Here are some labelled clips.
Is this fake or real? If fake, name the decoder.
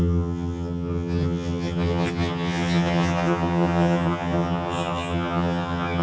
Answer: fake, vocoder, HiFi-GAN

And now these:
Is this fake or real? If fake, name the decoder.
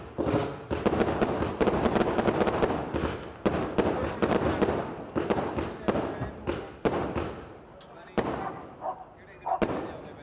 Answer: real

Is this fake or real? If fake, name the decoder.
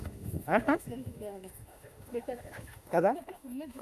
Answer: fake, autoencoder, DAC-VAE